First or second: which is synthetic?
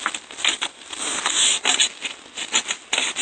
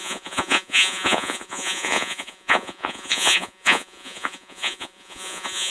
second